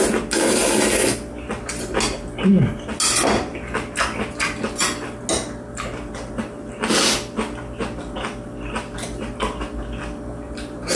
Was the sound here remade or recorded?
recorded